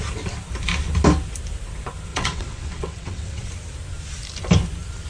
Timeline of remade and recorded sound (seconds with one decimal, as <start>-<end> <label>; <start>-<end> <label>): 0.0-2.1 recorded; 2.1-3.5 remade; 3.5-5.1 recorded